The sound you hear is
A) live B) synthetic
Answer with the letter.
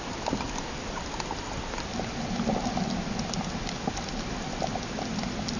A